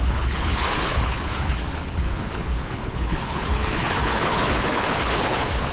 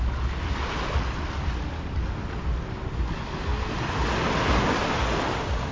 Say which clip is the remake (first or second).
first